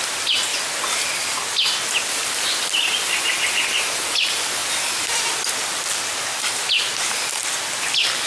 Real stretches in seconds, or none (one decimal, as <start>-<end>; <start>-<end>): 0.0-8.3